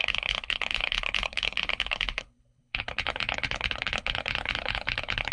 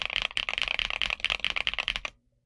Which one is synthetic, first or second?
first